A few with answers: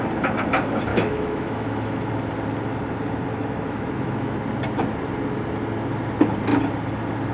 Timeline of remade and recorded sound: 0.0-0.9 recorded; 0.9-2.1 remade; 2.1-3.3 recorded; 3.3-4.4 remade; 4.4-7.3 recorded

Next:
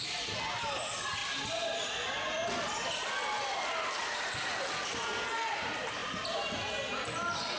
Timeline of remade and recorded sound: 0.0-7.6 recorded

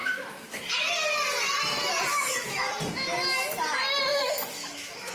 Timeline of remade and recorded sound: 0.0-0.6 remade; 0.6-2.1 recorded; 2.1-2.7 remade; 2.7-4.1 recorded; 4.1-5.1 remade

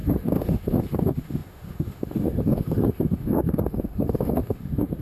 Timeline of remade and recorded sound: 0.0-5.0 remade

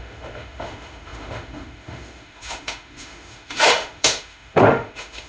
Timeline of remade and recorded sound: 0.0-5.3 remade